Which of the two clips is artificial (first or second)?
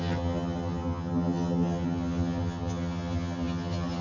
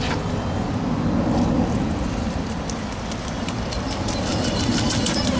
first